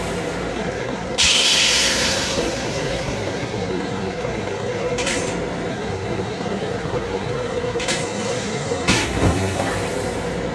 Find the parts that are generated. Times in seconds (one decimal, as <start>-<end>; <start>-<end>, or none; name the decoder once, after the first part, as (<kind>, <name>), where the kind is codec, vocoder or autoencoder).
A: 0.5-5.2 (codec, SNAC); 5.7-9.7